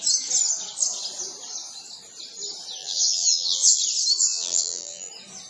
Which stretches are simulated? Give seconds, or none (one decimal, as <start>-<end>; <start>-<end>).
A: 2.8-3.8; 4.2-5.1